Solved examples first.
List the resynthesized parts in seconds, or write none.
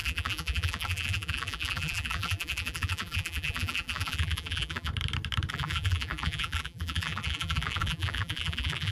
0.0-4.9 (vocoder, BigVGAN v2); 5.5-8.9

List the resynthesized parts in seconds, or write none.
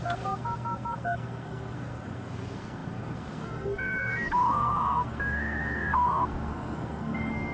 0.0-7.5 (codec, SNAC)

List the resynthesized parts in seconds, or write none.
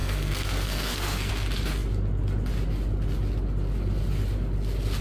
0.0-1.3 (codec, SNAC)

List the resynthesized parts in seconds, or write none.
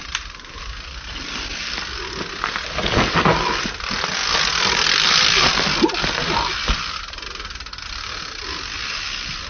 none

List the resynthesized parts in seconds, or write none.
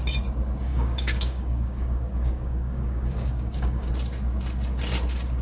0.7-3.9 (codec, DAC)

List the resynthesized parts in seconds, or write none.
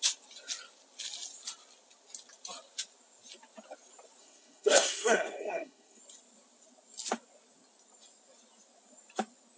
4.2-6.0 (codec, SNAC)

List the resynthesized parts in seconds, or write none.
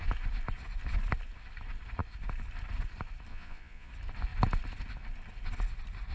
3.3-3.9 (vocoder, Vocos)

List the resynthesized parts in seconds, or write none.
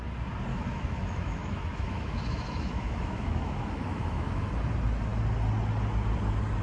0.5-4.5 (autoencoder, DAC-VAE)